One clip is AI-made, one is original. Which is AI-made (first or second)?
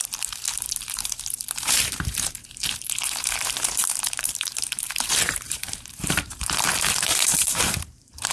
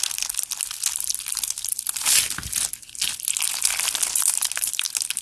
first